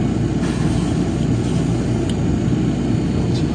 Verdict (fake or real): real